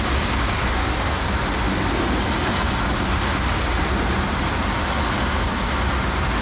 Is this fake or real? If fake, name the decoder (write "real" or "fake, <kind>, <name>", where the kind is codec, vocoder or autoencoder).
real